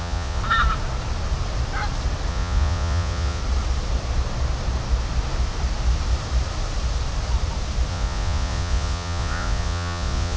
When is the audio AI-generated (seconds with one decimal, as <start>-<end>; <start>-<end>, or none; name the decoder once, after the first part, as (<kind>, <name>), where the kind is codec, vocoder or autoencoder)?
0.0-0.4 (vocoder, Vocos); 2.3-3.4; 7.9-10.4